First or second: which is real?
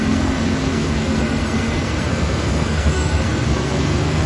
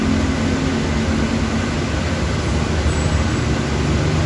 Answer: second